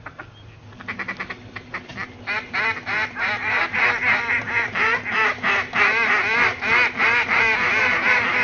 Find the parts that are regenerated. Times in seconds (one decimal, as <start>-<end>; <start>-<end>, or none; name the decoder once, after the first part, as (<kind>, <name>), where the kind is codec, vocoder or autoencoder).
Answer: none